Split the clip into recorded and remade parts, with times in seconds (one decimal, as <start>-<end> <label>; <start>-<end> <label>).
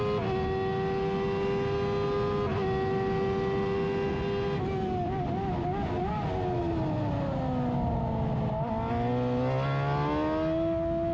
0.0-11.1 recorded